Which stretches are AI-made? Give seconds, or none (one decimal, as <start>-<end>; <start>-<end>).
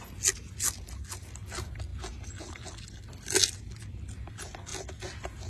none